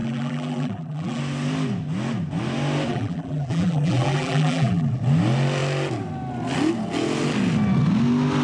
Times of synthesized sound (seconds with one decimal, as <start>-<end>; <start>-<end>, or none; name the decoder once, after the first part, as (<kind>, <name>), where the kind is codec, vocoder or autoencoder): 0.0-1.2 (vocoder, BigVGAN v2); 2.9-5.0